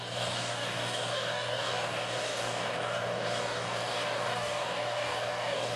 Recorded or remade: remade